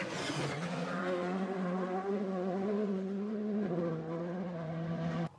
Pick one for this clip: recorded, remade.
remade